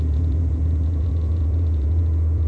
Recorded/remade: remade